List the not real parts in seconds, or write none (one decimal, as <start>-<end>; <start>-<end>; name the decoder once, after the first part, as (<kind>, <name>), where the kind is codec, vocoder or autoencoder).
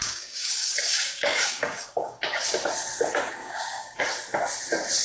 0.0-2.2 (codec, DAC); 3.4-4.0